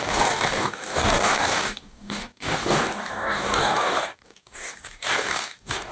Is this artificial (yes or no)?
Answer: yes